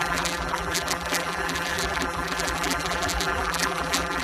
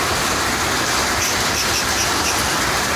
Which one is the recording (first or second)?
second